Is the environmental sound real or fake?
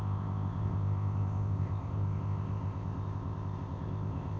fake